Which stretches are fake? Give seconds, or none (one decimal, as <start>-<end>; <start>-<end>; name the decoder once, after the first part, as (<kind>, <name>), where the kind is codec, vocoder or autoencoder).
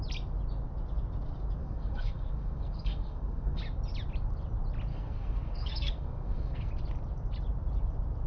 1.6-3.6 (codec, SNAC); 4.9-6.7